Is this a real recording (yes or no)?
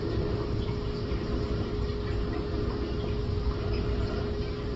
yes